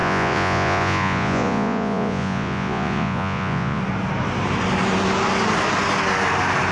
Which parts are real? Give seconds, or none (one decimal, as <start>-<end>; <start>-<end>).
3.8-6.7